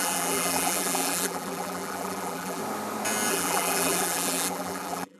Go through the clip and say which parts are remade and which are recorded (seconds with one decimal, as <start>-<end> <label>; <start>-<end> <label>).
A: 0.0-2.6 remade; 2.6-3.3 recorded; 3.3-5.2 remade